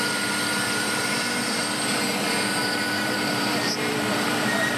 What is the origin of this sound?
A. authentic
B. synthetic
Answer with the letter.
B